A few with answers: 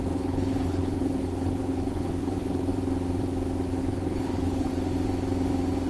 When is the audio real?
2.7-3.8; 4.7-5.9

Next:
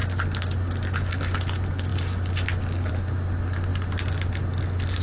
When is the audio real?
0.0-5.0

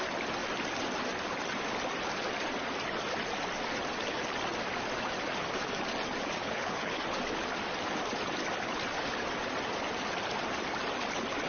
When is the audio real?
0.0-6.4; 7.0-11.5

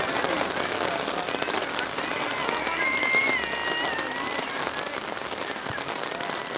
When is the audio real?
0.0-6.6

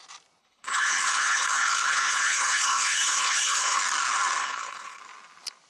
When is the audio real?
0.0-0.4; 3.8-4.4; 5.0-5.7

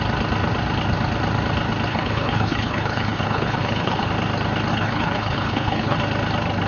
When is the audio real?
0.0-1.9; 4.1-4.7; 6.0-6.7

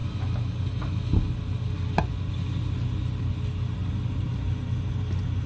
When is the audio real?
0.0-5.5

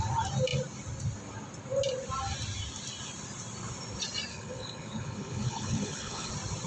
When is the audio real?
0.0-4.3; 6.3-6.7